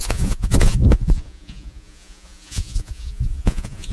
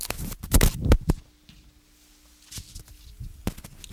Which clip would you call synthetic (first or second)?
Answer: first